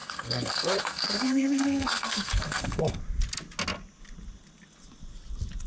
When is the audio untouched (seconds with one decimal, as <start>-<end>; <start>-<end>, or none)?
3.0-5.7